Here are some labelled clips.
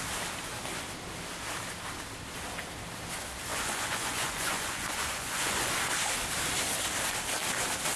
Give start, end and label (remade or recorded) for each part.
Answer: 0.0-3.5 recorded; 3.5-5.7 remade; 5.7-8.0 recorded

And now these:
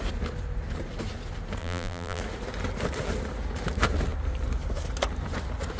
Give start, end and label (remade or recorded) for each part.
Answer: 0.0-1.6 recorded; 1.6-2.2 remade; 2.2-5.8 recorded

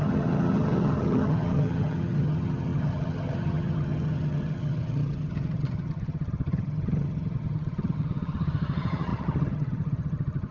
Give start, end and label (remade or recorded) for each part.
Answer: 0.0-10.5 remade

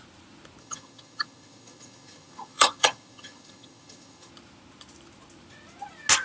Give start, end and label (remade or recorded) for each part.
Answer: 0.0-0.6 recorded; 0.6-4.3 remade; 4.3-6.2 recorded